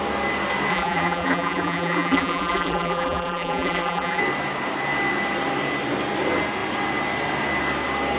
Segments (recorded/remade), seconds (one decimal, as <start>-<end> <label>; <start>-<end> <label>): 0.0-0.7 recorded; 0.7-4.2 remade; 4.2-8.2 recorded